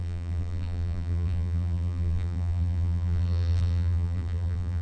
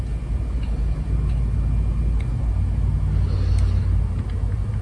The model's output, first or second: first